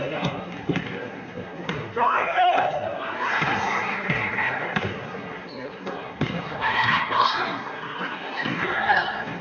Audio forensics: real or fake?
fake